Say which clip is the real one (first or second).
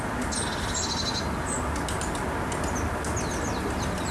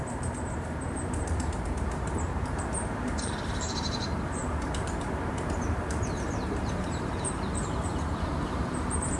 first